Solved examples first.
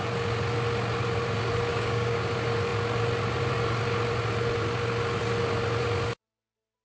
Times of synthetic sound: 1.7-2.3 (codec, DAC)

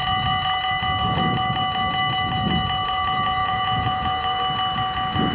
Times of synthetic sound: 3.4-4.4 (vocoder, Vocos)

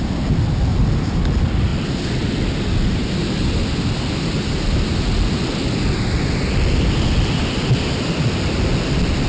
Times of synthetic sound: 0.7-1.2 (vocoder, BigVGAN v2)

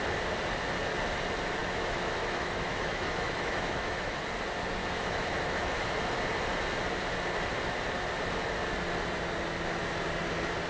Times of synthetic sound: 1.6-4.2 (autoencoder, DAC-VAE); 4.8-5.8

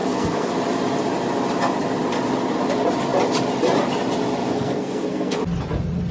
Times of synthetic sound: 0.0-0.5 (codec, SNAC); 4.4-5.4

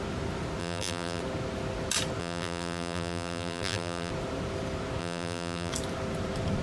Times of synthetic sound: 0.6-1.2 (vocoder, BigVGAN v2); 2.2-4.1; 5.0-5.7